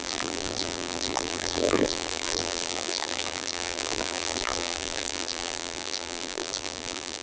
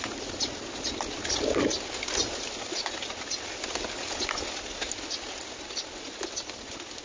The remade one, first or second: first